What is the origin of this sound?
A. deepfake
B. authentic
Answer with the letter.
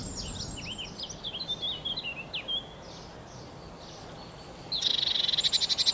B